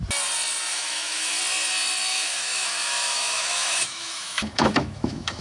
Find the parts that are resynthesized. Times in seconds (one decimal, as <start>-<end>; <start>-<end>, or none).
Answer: 0.7-1.4; 2.1-5.4